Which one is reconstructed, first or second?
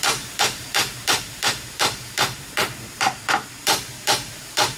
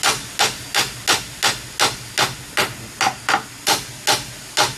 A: first